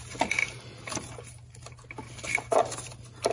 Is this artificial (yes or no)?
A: no